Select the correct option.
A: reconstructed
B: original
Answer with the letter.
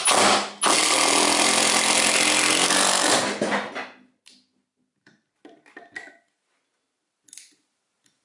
B